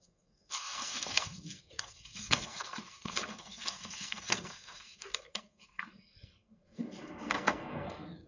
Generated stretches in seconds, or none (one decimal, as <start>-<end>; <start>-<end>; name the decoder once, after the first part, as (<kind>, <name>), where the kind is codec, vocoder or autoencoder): 0.0-8.3 (codec, SNAC)